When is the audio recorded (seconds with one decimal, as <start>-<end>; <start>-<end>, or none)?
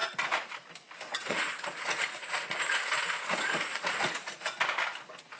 0.5-1.2; 4.4-5.4